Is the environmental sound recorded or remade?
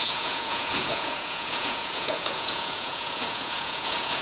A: remade